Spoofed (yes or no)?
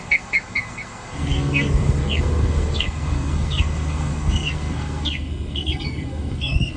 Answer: yes